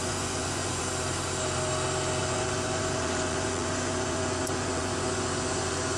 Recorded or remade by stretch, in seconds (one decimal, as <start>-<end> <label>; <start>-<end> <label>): 0.0-0.8 remade; 0.8-2.2 recorded; 2.2-6.0 remade